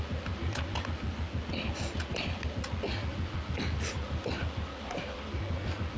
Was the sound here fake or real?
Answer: real